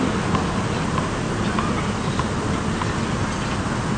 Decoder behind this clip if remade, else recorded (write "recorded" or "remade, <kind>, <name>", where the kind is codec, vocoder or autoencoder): recorded